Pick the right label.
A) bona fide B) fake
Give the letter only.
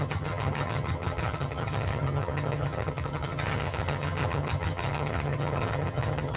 B